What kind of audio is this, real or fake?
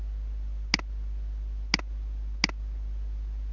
real